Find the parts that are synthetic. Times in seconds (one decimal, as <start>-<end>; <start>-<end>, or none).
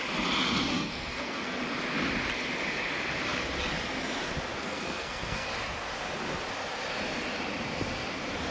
0.7-1.6; 4.6-5.5